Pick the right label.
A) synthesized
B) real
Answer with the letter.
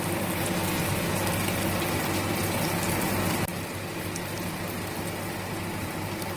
B